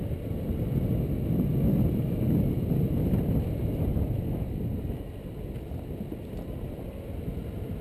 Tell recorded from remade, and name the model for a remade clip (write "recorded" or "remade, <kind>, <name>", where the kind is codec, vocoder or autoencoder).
recorded